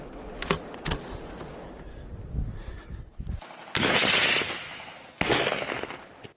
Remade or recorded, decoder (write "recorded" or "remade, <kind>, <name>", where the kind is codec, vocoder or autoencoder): recorded